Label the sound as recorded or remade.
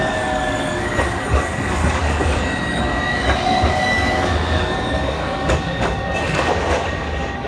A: remade